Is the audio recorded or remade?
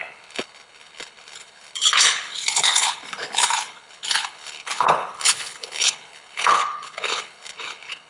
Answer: remade